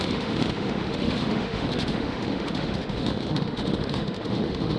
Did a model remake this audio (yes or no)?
yes